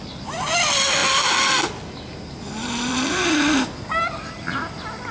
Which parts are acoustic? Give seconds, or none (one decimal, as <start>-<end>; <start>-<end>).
0.0-5.1